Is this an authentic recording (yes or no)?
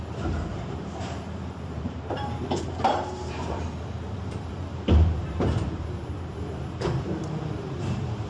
no